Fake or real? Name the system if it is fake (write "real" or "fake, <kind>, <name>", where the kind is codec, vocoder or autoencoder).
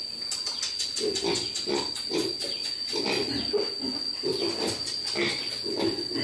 real